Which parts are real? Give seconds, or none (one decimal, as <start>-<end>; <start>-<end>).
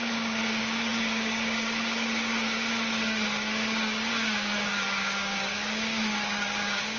none